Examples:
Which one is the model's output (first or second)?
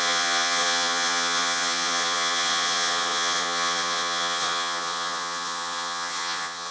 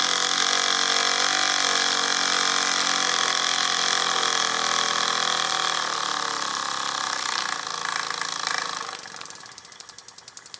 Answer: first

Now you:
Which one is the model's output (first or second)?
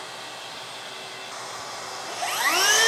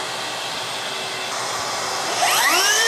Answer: second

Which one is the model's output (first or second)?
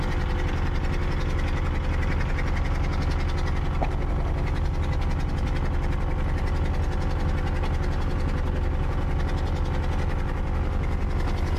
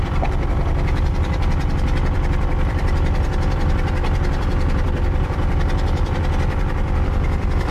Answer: second